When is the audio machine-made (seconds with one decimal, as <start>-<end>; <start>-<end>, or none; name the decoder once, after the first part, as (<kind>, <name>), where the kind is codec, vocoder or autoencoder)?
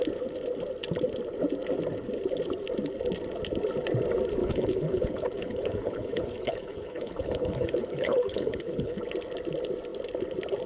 4.4-9.0 (codec, HILCodec)